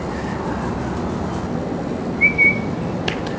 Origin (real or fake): real